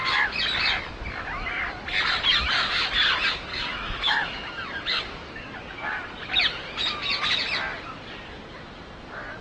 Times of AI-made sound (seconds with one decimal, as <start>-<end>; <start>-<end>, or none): 3.5-5.3